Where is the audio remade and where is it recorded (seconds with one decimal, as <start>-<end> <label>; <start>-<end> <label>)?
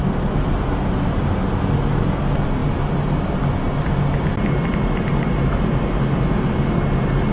0.0-7.3 recorded